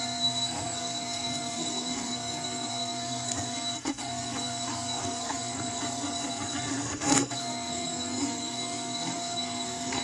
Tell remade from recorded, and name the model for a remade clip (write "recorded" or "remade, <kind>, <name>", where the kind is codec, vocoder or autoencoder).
remade, codec, SNAC